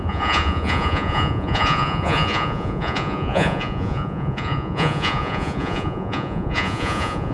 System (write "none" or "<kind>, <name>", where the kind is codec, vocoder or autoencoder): vocoder, Vocos